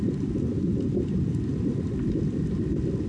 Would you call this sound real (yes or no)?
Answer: yes